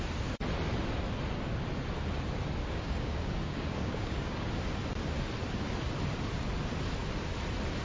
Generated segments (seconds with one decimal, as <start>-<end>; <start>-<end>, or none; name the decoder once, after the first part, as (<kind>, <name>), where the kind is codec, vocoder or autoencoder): 2.6-4.5 (codec, DAC)